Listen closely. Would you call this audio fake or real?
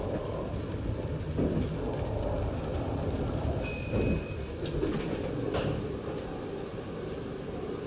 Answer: real